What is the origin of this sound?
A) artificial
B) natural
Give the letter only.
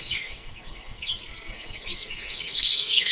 A